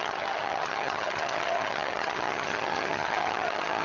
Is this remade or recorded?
remade